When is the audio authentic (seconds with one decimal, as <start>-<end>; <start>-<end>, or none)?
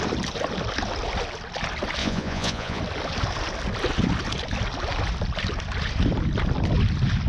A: 0.0-2.0; 2.8-7.3